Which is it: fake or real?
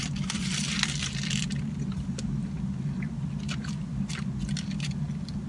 real